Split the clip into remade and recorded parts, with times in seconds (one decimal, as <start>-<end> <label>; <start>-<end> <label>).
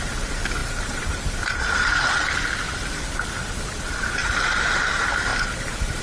0.0-0.6 recorded; 0.6-1.6 remade; 1.6-5.3 recorded; 5.3-6.0 remade